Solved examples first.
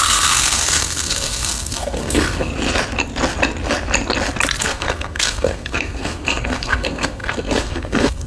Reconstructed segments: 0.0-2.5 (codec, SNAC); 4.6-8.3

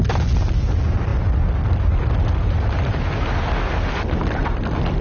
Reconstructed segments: none

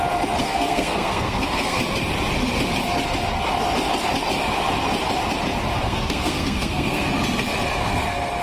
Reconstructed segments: 0.4-1.8 (codec, SNAC); 5.8-7.1

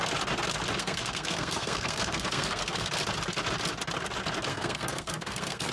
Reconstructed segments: 0.8-2.9 (codec, SNAC); 4.5-5.7

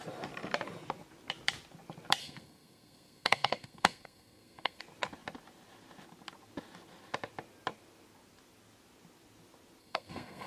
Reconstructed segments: 2.2-4.8 (codec, SNAC); 9.8-10.5